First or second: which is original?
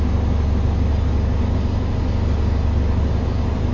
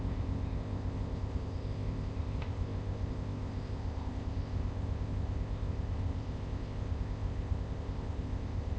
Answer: first